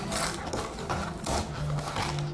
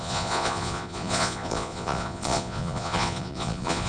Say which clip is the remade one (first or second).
second